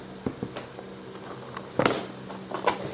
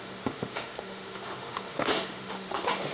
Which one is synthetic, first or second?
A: second